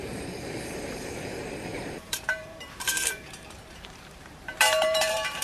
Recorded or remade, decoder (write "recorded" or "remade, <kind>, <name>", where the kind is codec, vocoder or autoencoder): remade, vocoder, BigVGAN v2